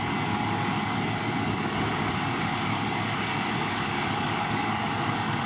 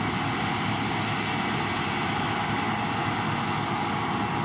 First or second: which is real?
second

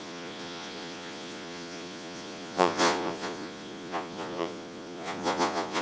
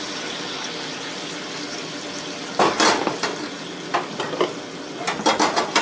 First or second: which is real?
second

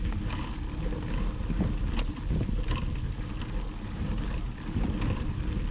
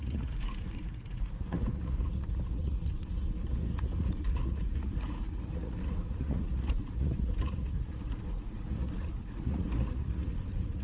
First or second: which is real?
first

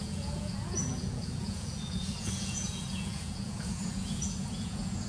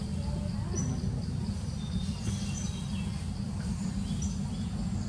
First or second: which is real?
second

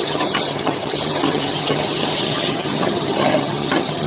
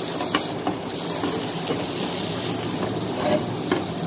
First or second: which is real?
second